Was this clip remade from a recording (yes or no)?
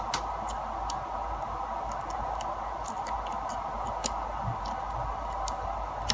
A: no